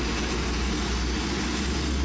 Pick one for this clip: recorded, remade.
recorded